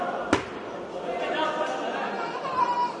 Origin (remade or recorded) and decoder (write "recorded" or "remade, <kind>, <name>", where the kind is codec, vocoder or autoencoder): recorded